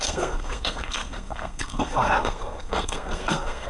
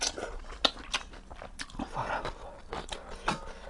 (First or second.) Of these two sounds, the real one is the second